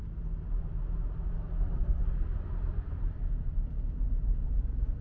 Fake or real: real